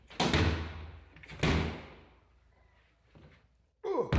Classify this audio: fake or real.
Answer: real